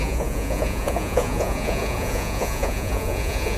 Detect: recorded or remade remade